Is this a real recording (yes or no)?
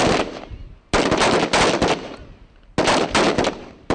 yes